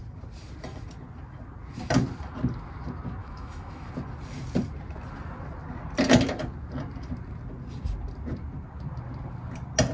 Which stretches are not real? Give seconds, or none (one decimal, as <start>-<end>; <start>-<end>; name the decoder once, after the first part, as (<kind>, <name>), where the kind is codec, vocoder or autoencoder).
3.2-3.9 (autoencoder, DAC-VAE)